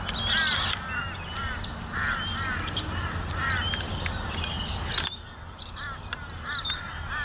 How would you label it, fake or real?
real